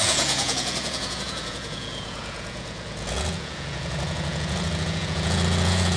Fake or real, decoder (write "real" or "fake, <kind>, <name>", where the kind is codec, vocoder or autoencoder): fake, vocoder, Vocos